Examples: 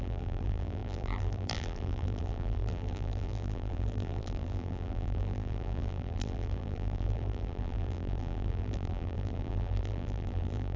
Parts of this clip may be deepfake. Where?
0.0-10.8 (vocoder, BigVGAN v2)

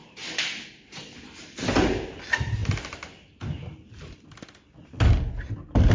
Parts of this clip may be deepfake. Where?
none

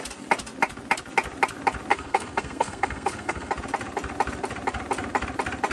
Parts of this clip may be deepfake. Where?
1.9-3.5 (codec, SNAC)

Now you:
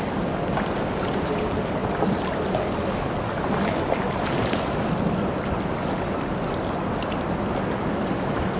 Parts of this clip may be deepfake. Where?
none

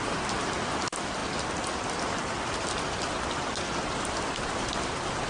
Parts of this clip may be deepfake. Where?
none

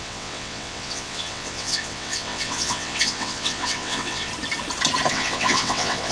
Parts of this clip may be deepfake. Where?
0.0-4.3 (vocoder, WaveNeXt); 5.1-6.1